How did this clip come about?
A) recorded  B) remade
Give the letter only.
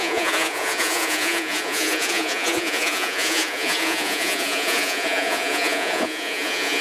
B